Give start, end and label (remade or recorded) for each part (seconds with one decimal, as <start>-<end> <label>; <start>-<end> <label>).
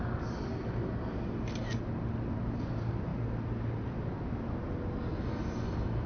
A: 0.0-6.1 recorded